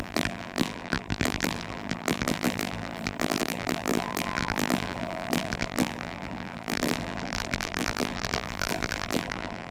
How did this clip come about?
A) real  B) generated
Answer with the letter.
B